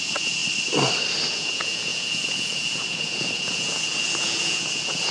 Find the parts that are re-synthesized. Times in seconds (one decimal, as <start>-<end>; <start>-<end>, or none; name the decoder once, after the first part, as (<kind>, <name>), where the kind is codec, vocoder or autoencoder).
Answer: 0.0-0.4 (vocoder, Vocos); 1.3-5.1